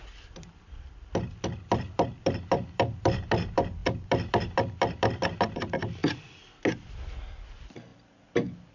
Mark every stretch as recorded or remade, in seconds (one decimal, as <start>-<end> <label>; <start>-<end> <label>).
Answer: 0.0-6.0 remade; 6.0-6.7 recorded; 6.7-8.7 remade